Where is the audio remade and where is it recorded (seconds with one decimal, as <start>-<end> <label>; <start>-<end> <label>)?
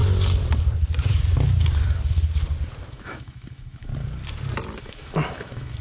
0.0-2.9 recorded; 2.9-3.9 remade; 3.9-4.8 recorded; 4.8-5.8 remade